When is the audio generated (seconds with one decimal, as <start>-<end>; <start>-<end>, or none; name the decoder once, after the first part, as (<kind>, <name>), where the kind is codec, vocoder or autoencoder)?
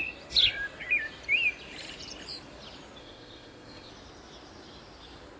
3.0-3.9 (codec, ZipCodec)